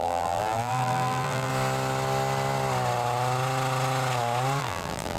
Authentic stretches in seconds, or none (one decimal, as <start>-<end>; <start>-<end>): 1.5-4.6